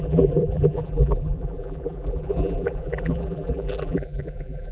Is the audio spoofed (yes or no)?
yes